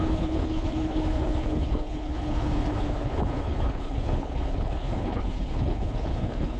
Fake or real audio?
fake